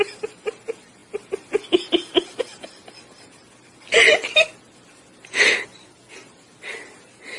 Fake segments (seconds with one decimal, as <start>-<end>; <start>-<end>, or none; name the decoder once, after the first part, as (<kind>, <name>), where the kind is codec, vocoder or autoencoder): none

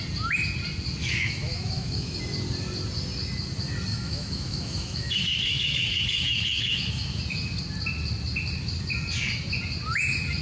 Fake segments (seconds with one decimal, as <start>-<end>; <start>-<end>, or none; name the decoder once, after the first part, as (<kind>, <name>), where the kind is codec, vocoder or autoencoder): 1.0-2.2 (autoencoder, DAC-VAE); 3.9-7.2

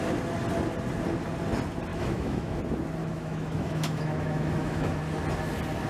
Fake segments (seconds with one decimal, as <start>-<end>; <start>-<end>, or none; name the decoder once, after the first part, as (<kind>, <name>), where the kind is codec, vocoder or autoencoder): 1.9-2.6 (autoencoder, DAC-VAE); 3.0-5.0

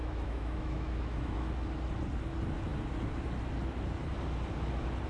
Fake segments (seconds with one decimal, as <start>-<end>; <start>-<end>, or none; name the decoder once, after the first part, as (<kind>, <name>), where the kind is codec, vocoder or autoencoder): 0.0-1.5 (autoencoder, DAC-VAE)

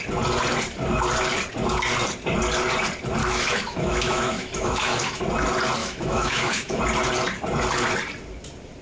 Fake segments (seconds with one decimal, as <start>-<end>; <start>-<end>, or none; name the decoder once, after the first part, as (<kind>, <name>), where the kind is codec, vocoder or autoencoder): 3.2-5.2 (autoencoder, DAC-VAE); 5.8-6.8

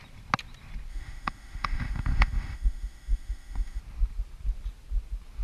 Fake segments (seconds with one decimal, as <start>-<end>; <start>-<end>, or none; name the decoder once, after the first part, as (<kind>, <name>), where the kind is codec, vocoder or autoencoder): 0.9-3.8 (autoencoder, DAC-VAE)

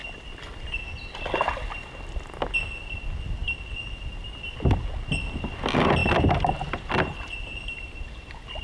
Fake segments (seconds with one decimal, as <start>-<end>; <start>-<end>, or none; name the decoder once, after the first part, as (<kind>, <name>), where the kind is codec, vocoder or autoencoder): none